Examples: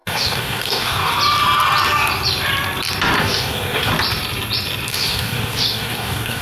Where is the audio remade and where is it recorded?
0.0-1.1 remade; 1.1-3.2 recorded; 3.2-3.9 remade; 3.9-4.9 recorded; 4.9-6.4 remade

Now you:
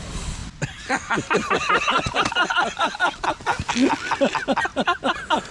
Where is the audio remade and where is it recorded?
0.0-5.5 recorded

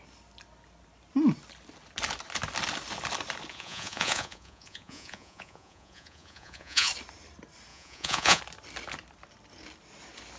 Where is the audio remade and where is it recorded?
0.0-3.5 recorded; 3.5-6.9 remade; 6.9-7.7 recorded; 7.7-8.4 remade; 8.4-10.4 recorded